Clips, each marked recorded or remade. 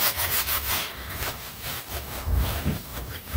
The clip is remade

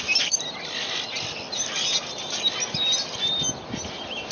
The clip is recorded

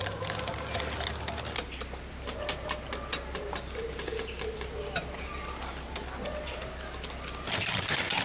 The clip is recorded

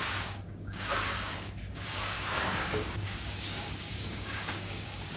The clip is remade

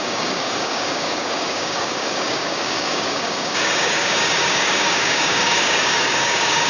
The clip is remade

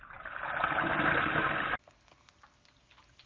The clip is recorded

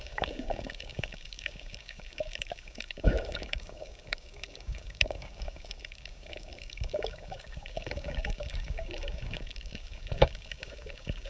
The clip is remade